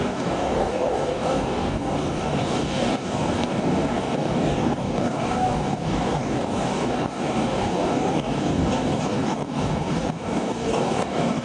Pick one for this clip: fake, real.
fake